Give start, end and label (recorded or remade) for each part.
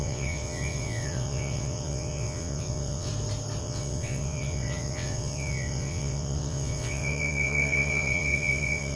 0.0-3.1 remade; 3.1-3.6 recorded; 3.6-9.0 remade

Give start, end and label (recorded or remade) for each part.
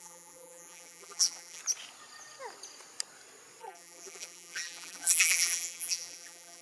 0.0-1.6 remade; 1.6-3.6 recorded; 3.6-6.6 remade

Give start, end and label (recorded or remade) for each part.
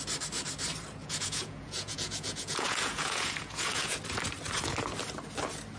0.0-1.0 recorded; 1.0-4.0 remade; 4.0-5.8 recorded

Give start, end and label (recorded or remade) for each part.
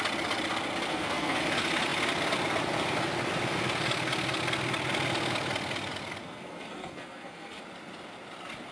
0.0-0.9 recorded; 0.9-1.4 remade; 1.4-6.2 recorded; 6.2-7.6 remade; 7.6-8.7 recorded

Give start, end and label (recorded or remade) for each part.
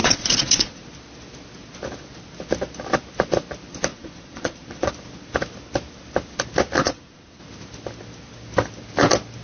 0.0-0.8 remade; 0.8-3.9 recorded; 3.9-4.9 remade; 4.9-6.8 recorded; 6.8-7.4 remade; 7.4-9.4 recorded